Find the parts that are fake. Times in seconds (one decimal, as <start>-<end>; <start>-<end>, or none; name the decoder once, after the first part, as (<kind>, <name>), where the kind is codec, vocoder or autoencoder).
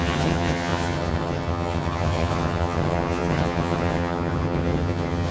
0.0-5.3 (vocoder, HiFi-GAN)